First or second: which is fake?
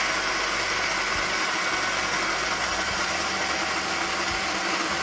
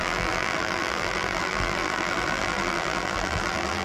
second